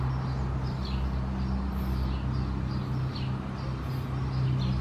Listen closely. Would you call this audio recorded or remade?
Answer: recorded